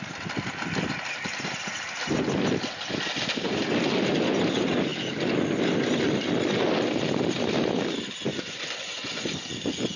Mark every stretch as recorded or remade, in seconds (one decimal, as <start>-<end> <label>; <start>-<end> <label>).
0.0-8.3 recorded; 8.3-9.4 remade; 9.4-10.0 recorded